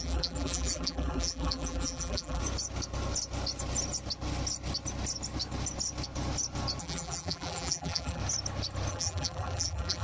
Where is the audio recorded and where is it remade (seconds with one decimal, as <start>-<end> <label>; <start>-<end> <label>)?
0.0-2.4 remade; 2.4-6.8 recorded; 6.8-8.2 remade; 8.2-8.9 recorded; 8.9-10.0 remade